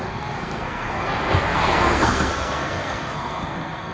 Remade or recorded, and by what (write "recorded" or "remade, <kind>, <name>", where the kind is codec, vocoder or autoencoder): remade, codec, SNAC